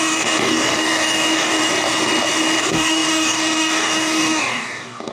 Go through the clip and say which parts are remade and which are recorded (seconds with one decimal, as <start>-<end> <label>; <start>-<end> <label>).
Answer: 0.0-1.6 remade; 1.6-2.6 recorded; 2.6-5.1 remade